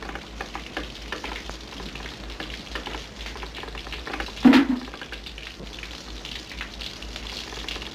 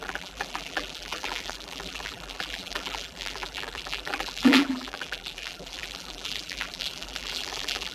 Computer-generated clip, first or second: second